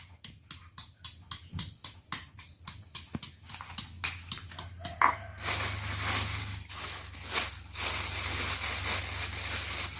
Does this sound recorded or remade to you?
recorded